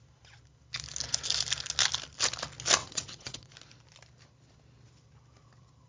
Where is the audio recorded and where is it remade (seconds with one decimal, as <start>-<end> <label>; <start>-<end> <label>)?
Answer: 0.0-2.8 recorded; 2.8-3.5 remade; 3.5-5.9 recorded